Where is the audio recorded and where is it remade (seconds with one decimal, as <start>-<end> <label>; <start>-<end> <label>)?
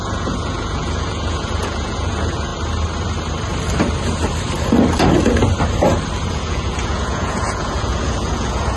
0.0-2.5 remade; 2.5-6.3 recorded; 6.3-8.8 remade